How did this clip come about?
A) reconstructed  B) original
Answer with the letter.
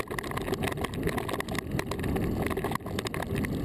B